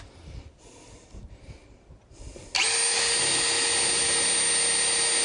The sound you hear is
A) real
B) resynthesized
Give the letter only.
A